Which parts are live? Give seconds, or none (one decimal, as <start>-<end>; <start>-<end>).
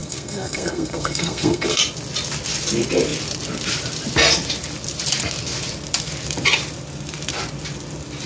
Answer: 1.8-8.3